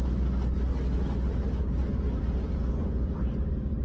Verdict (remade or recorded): recorded